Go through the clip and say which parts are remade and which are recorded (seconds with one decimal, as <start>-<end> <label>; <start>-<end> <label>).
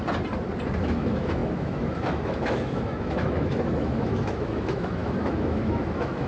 0.0-0.8 recorded; 0.8-6.3 remade